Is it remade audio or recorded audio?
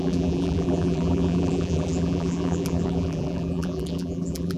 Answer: remade